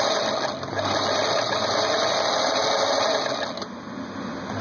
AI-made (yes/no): no